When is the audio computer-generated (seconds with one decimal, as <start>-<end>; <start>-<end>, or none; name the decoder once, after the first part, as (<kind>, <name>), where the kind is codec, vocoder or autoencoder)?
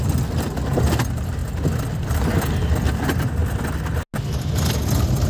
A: none